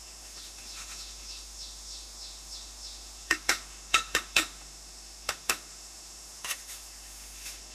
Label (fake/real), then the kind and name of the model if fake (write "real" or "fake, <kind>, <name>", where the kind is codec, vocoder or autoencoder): fake, autoencoder, DAC-VAE